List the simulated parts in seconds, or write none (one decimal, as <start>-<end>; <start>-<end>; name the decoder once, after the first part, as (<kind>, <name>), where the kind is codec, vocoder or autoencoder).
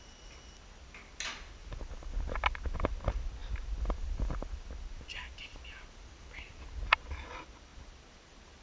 none